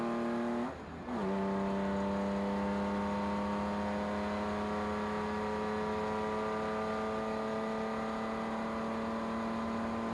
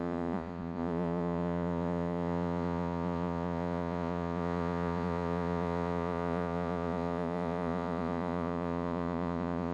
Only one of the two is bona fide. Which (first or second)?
first